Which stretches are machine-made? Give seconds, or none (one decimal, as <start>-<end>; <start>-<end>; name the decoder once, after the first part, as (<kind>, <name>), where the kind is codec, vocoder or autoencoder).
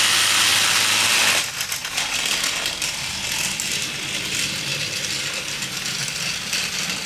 none